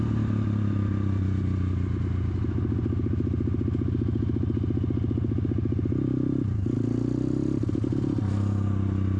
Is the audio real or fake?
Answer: real